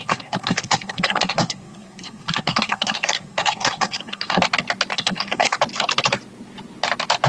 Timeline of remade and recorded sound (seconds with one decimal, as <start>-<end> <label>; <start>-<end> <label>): 0.0-4.4 remade; 4.4-4.9 recorded; 4.9-5.6 remade; 5.6-7.3 recorded